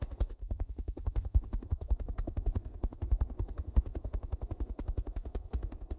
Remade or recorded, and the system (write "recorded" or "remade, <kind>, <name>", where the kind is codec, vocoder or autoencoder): remade, codec, SNAC